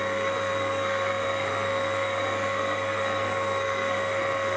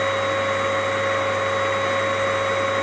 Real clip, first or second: second